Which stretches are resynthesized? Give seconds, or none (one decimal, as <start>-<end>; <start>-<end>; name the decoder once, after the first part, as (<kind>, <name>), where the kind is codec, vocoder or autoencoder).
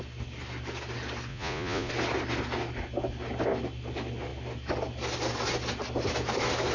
1.3-1.9 (vocoder, Vocos)